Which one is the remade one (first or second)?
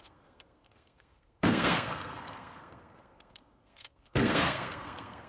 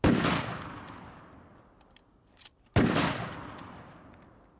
first